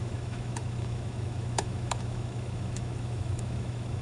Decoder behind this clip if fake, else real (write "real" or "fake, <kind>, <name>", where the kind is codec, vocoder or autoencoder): fake, autoencoder, DAC-VAE